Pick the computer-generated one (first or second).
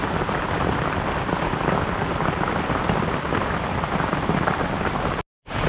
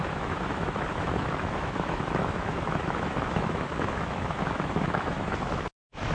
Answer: second